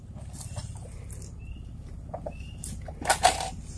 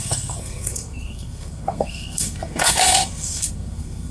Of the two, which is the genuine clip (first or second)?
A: first